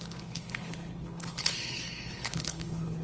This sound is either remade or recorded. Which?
remade